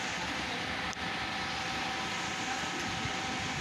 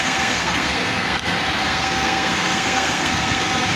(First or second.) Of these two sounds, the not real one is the second